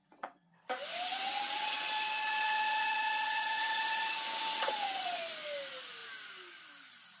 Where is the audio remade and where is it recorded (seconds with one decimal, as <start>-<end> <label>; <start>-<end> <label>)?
0.0-0.5 remade; 0.5-0.9 recorded; 0.9-5.2 remade; 5.2-7.2 recorded